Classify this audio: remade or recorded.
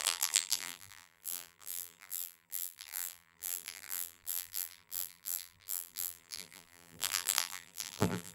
remade